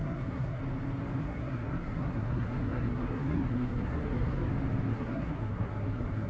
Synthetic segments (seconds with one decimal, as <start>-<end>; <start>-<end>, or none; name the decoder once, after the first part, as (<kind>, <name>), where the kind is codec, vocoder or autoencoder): 0.0-0.6 (codec, SNAC); 1.2-4.5; 4.9-6.3